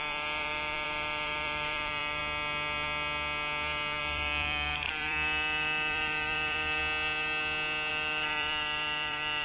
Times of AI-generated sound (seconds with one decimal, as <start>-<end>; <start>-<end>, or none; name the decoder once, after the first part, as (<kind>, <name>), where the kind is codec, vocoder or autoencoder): 0.0-2.2 (vocoder, BigVGAN v2); 4.0-6.8; 7.9-9.4